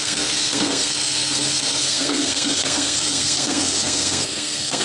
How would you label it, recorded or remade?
remade